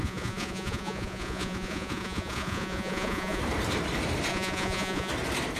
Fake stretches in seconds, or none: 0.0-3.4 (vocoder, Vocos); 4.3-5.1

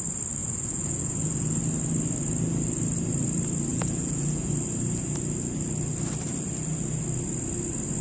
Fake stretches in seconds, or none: 0.4-1.6 (vocoder, Vocos); 3.7-4.5

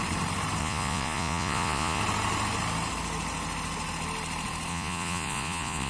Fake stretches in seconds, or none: 0.6-2.0 (vocoder, Vocos); 4.7-5.9

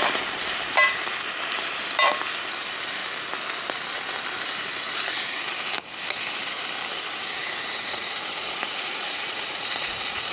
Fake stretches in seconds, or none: 7.4-10.3 (vocoder, Vocos)

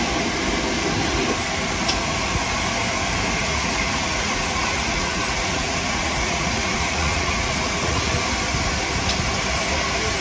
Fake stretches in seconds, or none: 3.4-8.1 (vocoder, Vocos)

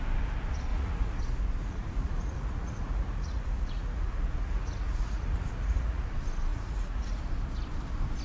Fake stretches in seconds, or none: 0.7-1.2 (vocoder, Vocos); 1.6-6.1; 6.5-7.2

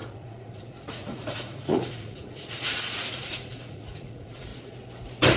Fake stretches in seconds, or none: 0.0-4.5 (vocoder, Vocos)

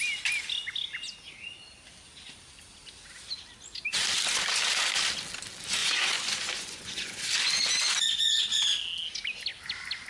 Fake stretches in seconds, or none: 5.8-7.2 (vocoder, Vocos)